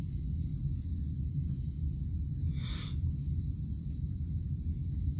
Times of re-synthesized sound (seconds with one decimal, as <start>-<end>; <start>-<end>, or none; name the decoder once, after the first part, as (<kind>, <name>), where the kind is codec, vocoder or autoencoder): none